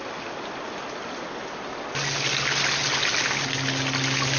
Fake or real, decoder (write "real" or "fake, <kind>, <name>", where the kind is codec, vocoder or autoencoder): real